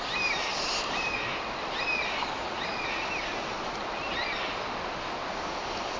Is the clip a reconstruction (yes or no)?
no